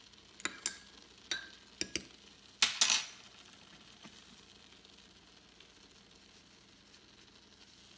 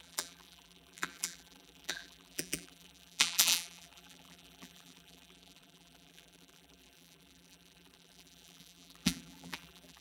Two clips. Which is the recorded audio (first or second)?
first